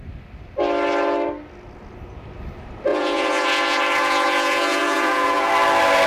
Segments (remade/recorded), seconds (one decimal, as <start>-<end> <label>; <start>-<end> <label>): 0.0-2.9 recorded; 2.9-5.5 remade; 5.5-6.1 recorded